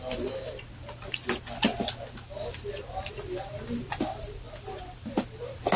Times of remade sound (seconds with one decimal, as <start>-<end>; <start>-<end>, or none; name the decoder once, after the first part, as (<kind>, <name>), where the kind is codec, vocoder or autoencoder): none